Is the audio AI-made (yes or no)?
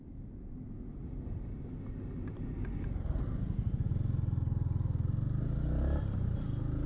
no